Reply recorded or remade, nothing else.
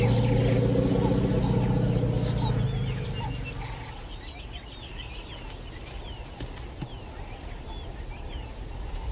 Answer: recorded